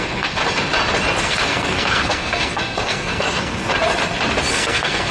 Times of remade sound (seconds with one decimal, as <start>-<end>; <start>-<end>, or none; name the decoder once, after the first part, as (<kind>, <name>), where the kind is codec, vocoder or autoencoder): 0.0-0.4 (codec, SNAC); 1.2-3.6; 4.5-5.1